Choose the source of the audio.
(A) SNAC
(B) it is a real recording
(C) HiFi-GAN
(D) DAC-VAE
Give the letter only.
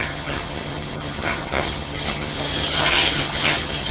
C